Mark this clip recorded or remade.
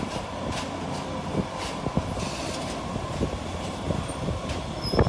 recorded